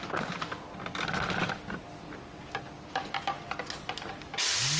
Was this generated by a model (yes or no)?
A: no